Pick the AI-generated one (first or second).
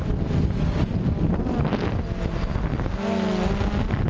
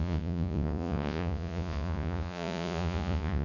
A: second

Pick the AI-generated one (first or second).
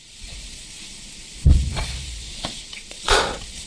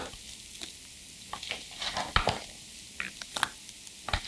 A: first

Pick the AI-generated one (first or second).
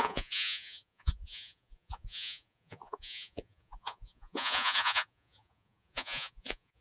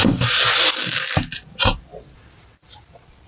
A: first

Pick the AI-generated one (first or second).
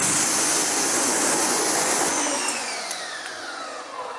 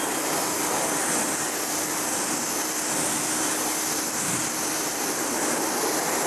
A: first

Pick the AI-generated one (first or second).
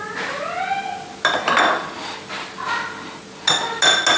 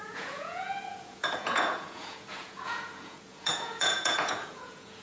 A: second